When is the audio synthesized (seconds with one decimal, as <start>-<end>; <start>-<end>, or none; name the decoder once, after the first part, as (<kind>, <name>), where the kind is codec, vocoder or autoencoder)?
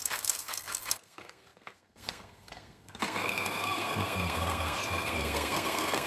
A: 0.0-6.1 (codec, SNAC)